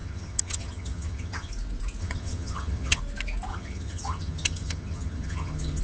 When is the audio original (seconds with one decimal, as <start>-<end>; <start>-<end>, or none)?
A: 1.5-2.0; 3.0-3.5

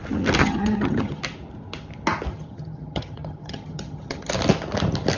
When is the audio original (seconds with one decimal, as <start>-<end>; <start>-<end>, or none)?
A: 0.0-0.4; 1.2-2.3; 4.3-5.2